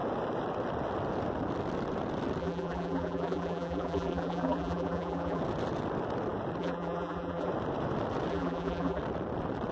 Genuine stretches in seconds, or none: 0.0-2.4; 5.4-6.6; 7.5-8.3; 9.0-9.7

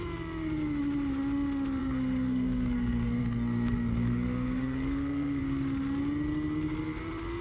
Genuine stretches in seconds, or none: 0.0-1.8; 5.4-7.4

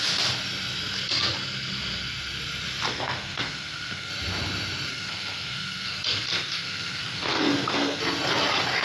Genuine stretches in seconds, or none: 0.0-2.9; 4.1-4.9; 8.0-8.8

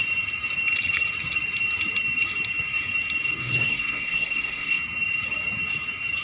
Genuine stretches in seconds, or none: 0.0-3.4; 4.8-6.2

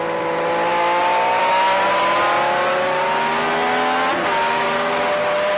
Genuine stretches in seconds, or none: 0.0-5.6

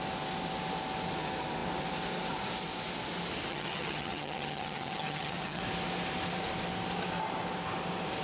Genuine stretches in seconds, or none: 0.0-3.5; 5.6-8.2

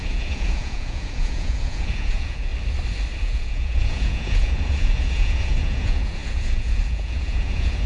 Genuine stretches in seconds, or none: 2.5-3.2

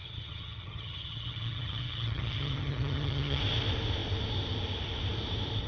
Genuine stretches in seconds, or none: 3.4-5.7